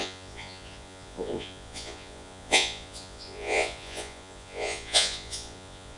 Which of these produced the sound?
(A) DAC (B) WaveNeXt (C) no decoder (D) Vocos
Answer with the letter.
D